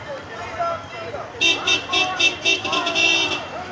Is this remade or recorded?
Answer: recorded